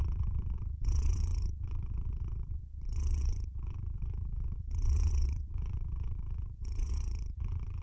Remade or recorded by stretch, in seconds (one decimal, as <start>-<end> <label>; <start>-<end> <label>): 0.0-7.8 remade